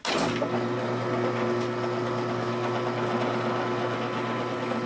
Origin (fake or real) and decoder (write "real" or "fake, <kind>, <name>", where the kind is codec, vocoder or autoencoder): real